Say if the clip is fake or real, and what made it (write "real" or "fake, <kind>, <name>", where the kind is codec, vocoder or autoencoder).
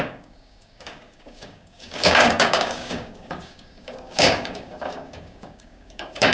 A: fake, codec, DAC